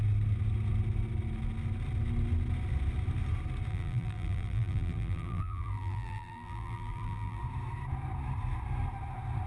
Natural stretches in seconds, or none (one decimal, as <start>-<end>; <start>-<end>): 0.0-3.7; 7.4-9.5